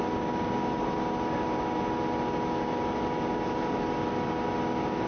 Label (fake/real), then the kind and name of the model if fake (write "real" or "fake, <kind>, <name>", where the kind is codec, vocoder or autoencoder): real